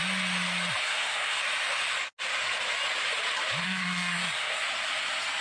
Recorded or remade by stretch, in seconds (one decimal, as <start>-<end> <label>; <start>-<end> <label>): 0.0-0.8 recorded; 0.8-1.4 remade; 1.4-3.6 recorded; 3.6-4.6 remade; 4.6-5.4 recorded